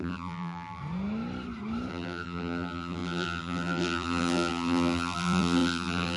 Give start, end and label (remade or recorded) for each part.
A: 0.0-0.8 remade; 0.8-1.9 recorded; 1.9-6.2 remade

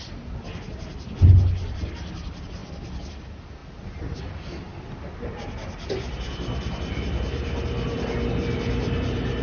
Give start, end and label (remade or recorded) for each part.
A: 0.0-9.4 recorded

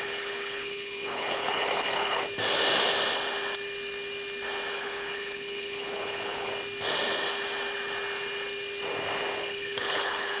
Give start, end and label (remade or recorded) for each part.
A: 0.0-2.2 remade; 2.2-4.7 recorded; 4.7-6.5 remade; 6.5-9.4 recorded; 9.4-10.4 remade

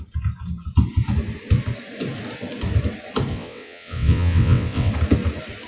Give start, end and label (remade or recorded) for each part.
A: 0.0-3.3 recorded; 3.3-4.9 remade; 4.9-5.7 recorded

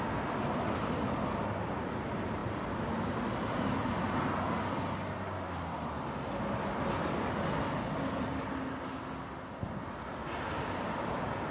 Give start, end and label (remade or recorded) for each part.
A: 0.0-11.5 recorded